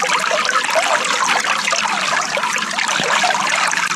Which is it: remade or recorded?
recorded